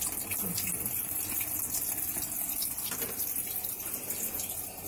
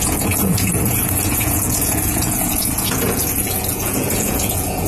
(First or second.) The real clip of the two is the first